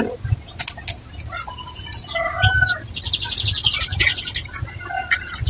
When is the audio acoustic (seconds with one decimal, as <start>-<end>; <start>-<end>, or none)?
0.0-5.5